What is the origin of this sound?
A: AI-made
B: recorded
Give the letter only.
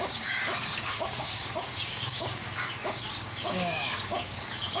A